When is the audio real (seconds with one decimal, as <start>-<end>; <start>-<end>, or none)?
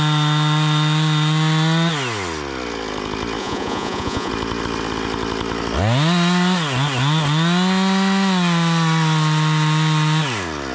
0.0-3.4; 4.3-10.7